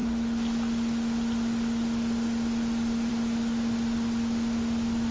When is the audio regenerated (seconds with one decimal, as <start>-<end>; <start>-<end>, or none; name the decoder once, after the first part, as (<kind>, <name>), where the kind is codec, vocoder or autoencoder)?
none